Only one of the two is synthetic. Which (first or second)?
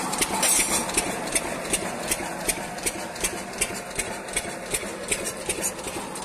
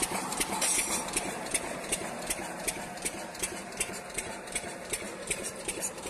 second